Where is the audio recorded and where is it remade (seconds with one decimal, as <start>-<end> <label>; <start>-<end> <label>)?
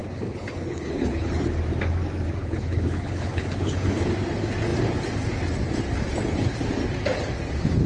0.0-1.3 remade; 1.3-2.4 recorded; 2.4-4.0 remade; 4.0-7.9 recorded